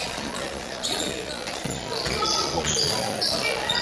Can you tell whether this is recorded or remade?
remade